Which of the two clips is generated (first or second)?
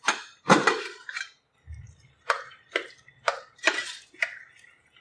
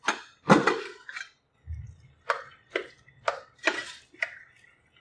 first